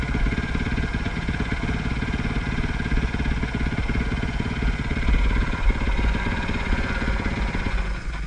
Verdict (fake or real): fake